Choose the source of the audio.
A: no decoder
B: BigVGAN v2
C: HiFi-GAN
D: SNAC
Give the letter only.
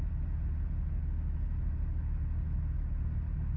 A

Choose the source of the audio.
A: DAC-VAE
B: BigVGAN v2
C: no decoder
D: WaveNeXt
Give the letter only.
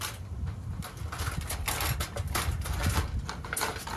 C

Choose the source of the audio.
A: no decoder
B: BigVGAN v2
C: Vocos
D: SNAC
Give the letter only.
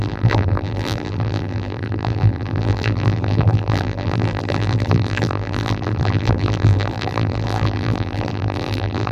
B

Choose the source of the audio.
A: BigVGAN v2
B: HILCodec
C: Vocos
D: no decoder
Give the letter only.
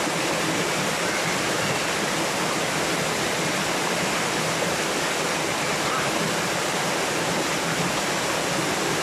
D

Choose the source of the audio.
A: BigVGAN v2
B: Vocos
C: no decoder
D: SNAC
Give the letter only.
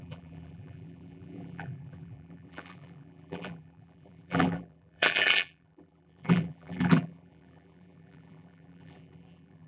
A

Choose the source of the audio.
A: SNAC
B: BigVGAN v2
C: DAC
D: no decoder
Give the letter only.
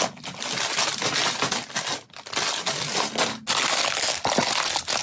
D